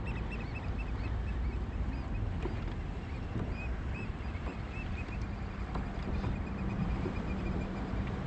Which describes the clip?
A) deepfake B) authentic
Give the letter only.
B